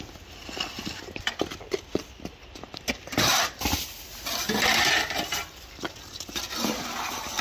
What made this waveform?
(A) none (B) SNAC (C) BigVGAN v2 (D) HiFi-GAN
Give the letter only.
C